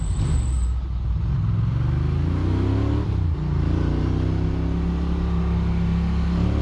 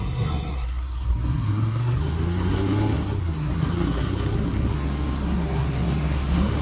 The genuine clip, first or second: first